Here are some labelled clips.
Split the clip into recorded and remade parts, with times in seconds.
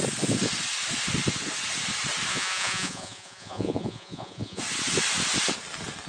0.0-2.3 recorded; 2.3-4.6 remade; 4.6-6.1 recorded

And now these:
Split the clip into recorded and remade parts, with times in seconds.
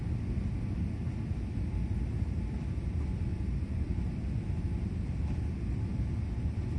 0.0-3.3 recorded; 3.3-3.9 remade; 3.9-5.9 recorded; 5.9-6.8 remade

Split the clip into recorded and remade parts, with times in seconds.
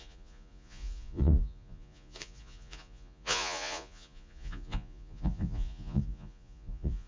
0.0-7.1 remade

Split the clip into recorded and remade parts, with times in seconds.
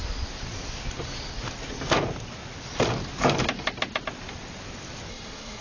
0.0-5.1 recorded; 5.1-5.6 remade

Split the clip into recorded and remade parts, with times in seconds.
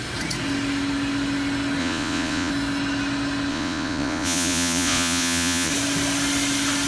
0.0-1.8 recorded; 1.8-2.5 remade; 2.5-3.5 recorded; 3.5-5.7 remade; 5.7-6.9 recorded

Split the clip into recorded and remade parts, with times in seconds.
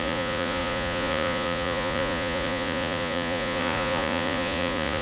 0.0-5.0 remade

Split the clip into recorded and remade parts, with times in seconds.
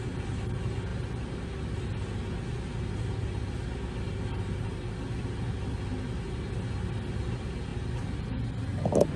0.0-9.2 recorded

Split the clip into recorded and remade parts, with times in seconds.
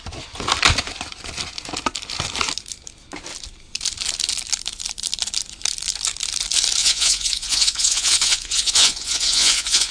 0.0-6.8 recorded; 6.8-9.9 remade